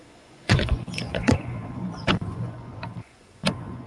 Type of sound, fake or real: fake